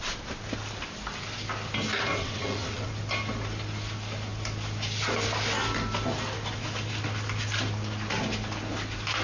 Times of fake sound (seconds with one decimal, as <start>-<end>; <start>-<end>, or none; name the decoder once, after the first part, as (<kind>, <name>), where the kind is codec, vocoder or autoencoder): 2.1-2.9 (vocoder, WaveNeXt)